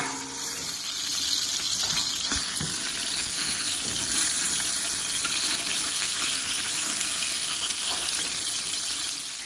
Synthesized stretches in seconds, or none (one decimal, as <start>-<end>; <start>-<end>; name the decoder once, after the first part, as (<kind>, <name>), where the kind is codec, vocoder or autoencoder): 3.2-3.8 (codec, SNAC); 5.9-8.1